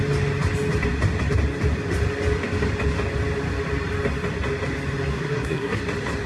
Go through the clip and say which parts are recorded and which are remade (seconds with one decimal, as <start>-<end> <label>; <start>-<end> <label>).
0.0-5.1 recorded; 5.1-5.8 remade; 5.8-6.3 recorded